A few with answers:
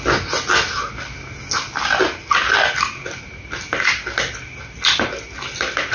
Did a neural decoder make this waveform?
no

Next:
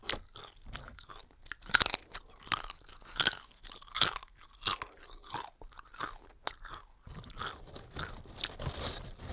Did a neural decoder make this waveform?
no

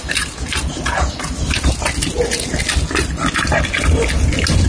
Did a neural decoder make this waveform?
no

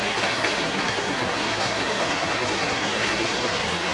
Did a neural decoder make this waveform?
yes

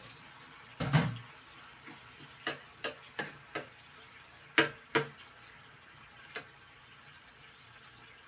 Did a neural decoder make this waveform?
no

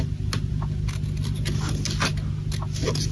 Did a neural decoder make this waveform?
no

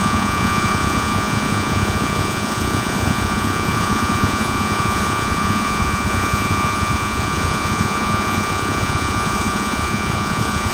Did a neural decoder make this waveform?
yes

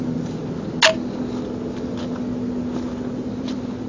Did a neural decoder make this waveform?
no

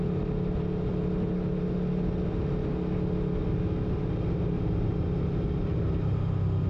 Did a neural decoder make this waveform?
no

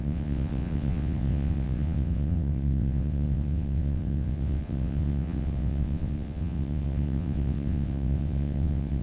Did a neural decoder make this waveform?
yes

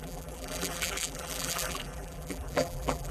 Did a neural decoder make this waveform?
yes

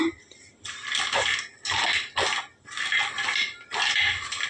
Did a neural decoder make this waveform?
no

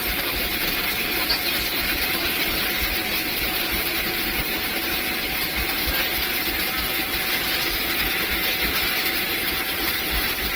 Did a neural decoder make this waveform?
no